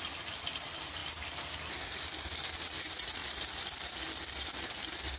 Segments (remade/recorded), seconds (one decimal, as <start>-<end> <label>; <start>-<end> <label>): 0.0-5.2 recorded